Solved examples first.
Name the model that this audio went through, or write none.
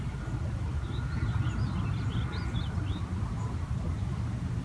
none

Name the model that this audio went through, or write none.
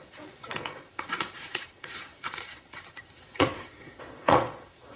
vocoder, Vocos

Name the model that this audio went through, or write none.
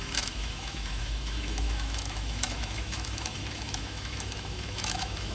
autoencoder, DAC-VAE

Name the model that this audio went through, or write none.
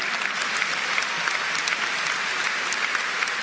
none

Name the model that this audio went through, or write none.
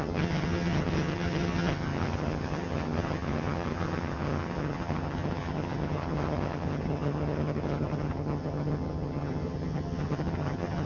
vocoder, HiFi-GAN